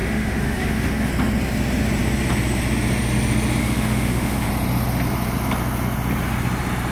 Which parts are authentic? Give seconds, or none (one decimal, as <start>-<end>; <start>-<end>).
1.1-3.6; 4.5-6.9